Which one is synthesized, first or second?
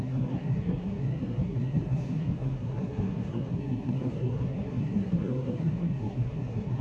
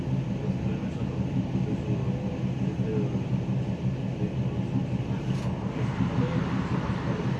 first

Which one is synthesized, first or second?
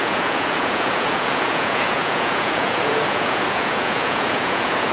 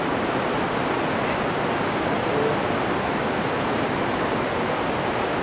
first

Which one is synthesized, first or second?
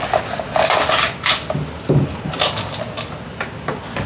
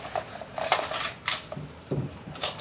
second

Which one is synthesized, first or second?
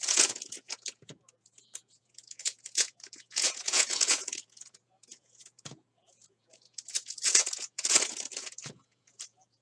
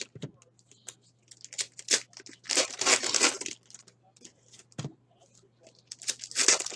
first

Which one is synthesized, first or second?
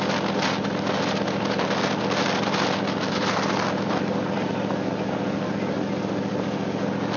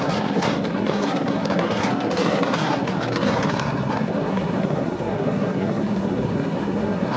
second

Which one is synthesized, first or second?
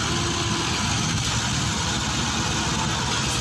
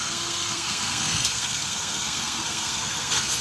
second